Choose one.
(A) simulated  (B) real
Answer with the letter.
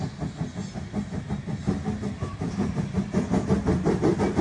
B